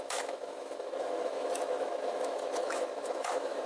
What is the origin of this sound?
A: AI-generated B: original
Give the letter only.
A